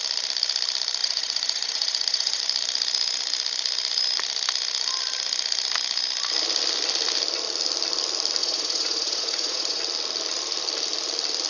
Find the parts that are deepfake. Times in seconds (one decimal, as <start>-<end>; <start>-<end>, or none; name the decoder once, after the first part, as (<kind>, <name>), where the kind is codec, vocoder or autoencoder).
1.0-2.4 (vocoder, Vocos); 8.4-9.8